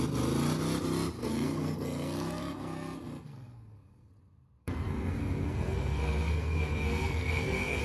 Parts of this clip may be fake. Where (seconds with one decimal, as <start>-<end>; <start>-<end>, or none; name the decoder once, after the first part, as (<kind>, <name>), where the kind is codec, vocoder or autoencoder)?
1.2-4.1 (codec, SNAC); 4.6-7.8